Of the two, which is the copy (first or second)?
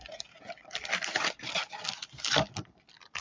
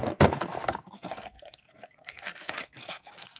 second